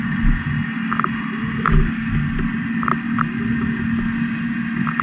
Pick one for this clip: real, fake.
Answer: real